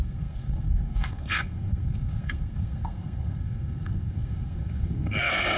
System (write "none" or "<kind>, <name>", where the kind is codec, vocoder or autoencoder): codec, SNAC